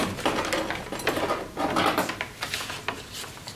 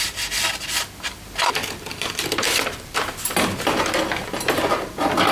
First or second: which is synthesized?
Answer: second